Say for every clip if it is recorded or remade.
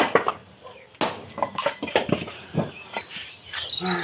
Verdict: recorded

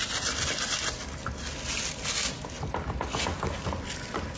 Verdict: recorded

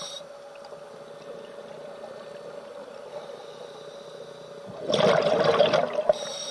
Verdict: recorded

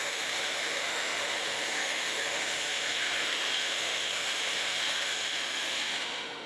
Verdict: remade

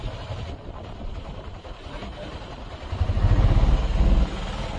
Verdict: recorded